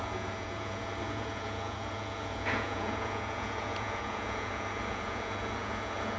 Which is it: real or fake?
fake